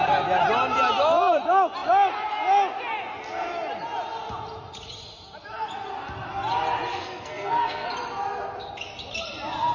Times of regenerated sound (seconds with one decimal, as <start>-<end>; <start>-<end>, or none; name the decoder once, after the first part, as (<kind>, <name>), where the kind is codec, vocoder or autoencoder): 6.9-7.9 (codec, SNAC)